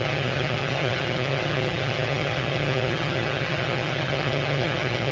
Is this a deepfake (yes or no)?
yes